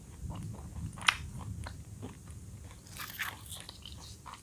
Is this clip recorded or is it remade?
recorded